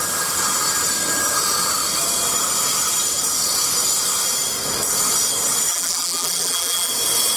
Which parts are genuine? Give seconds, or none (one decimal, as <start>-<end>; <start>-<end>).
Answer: 0.0-5.7; 6.9-7.4